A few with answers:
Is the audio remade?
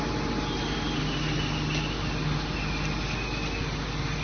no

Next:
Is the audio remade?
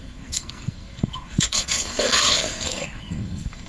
yes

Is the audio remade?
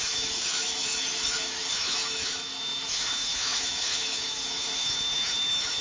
yes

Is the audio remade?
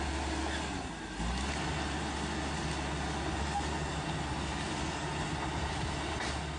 no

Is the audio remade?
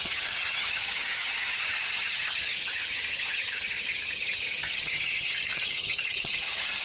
yes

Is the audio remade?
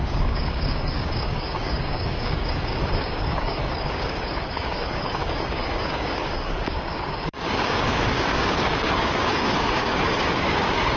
yes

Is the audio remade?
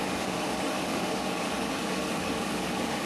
yes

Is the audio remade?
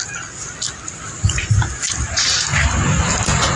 no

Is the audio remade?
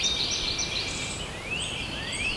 yes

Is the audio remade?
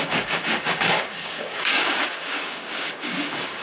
yes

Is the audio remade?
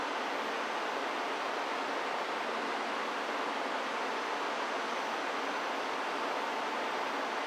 no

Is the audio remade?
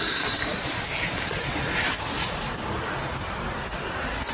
no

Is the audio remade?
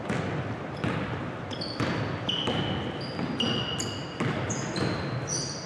no